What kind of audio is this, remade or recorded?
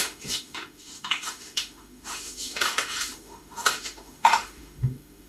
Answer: remade